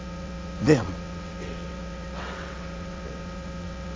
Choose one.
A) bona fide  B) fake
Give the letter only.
B